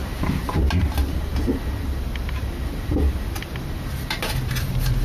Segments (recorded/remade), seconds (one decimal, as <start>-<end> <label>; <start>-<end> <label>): 0.0-5.0 recorded